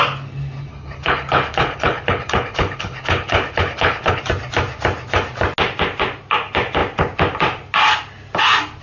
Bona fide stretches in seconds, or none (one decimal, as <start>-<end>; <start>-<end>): 0.0-0.7; 4.2-8.8